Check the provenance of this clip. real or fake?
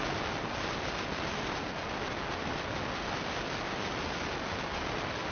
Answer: real